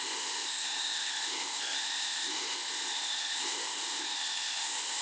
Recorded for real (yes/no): no